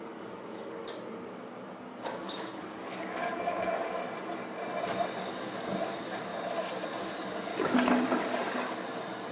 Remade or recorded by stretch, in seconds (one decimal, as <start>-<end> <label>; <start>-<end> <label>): 0.0-0.9 remade; 0.9-2.0 recorded; 2.0-4.0 remade; 4.0-5.2 recorded; 5.2-6.3 remade; 6.3-7.0 recorded; 7.0-7.5 remade; 7.5-9.3 recorded